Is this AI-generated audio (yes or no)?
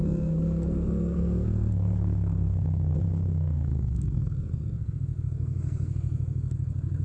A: yes